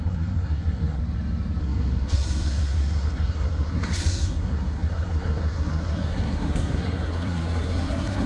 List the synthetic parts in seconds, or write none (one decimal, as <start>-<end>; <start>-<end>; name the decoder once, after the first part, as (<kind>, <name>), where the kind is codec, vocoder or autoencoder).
0.0-1.0 (codec, SNAC); 1.6-8.3